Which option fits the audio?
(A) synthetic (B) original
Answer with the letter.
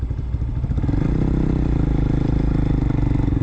B